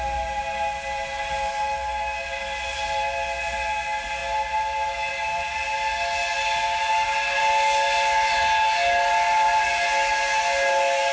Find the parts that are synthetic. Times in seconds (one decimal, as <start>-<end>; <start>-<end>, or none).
none